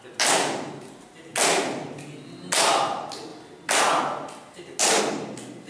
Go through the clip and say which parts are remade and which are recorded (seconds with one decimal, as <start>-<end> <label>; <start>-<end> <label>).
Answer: 0.0-5.7 recorded